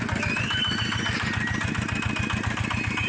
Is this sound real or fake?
real